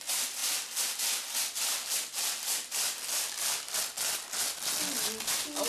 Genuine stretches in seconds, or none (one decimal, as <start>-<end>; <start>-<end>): 0.0-5.7